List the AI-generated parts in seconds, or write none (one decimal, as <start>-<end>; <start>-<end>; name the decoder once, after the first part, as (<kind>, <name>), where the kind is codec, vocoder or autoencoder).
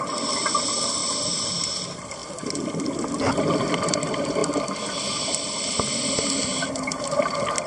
0.0-2.2 (vocoder, BigVGAN v2); 3.3-4.4; 5.2-7.7